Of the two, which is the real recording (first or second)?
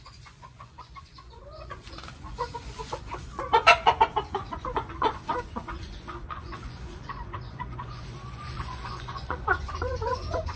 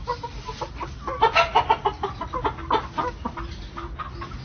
second